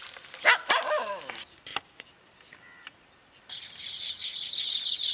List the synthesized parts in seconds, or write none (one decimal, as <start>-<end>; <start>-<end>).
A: 0.0-1.7; 3.3-5.1

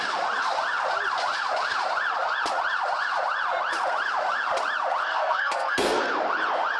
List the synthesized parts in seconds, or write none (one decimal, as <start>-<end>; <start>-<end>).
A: 5.0-6.1

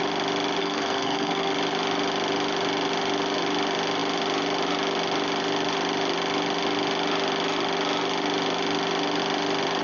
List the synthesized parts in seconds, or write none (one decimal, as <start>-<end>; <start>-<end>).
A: 0.6-1.5

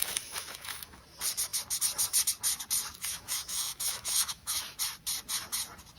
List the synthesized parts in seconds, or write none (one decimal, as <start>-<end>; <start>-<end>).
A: 0.0-1.0; 3.1-4.6

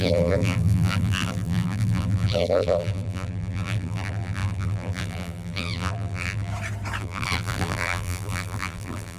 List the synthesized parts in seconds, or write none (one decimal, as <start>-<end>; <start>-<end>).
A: 0.0-6.5; 7.0-9.2

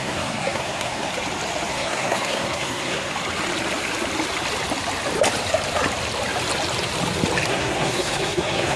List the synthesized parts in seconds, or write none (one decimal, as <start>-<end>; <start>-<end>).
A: 0.0-1.1; 1.7-3.1; 7.5-8.8

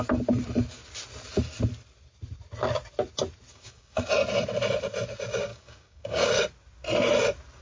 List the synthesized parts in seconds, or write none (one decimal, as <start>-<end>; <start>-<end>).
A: 3.5-4.1; 5.5-6.3

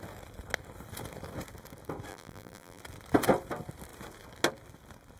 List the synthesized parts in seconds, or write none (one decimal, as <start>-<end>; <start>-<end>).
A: 2.1-2.8